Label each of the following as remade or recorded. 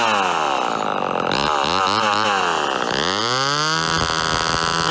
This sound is recorded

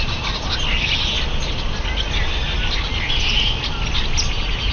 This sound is recorded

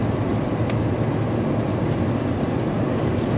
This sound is recorded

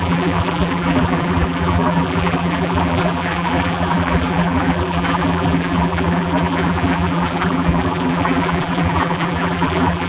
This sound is remade